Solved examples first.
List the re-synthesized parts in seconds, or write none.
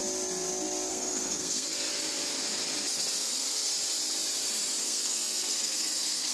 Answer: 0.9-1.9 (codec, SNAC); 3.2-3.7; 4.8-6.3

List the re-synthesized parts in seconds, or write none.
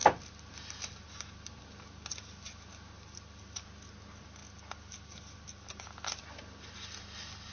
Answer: none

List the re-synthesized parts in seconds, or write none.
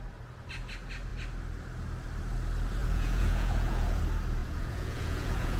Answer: 2.8-4.0 (vocoder, Vocos); 4.4-5.6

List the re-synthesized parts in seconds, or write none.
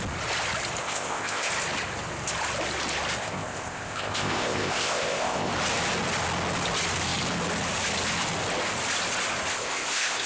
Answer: 0.8-1.5 (codec, ZipCodec); 3.2-5.5; 9.5-10.3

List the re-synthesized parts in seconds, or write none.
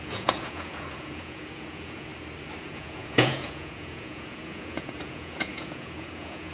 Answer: 0.0-2.1 (vocoder, Vocos); 2.6-6.5